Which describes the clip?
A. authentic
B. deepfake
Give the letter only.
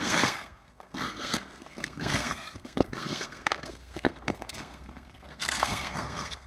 B